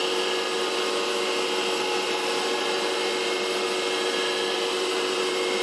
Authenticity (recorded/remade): recorded